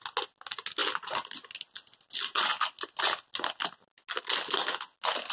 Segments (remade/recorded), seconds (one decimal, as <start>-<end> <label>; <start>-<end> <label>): 0.0-5.3 recorded